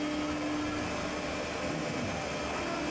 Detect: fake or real real